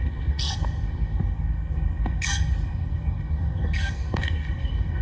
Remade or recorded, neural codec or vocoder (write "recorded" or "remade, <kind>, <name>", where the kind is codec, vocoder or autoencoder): remade, codec, SNAC